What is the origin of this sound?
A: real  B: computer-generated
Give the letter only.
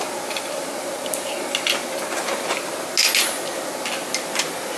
A